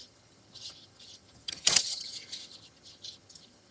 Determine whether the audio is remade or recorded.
remade